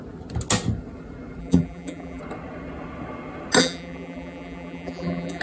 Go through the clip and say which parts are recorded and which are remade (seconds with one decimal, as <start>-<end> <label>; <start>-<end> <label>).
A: 0.0-1.4 recorded; 1.4-2.2 remade; 2.2-3.6 recorded; 3.6-5.4 remade